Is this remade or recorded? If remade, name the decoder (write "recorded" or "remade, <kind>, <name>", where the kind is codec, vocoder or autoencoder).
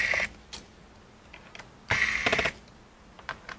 recorded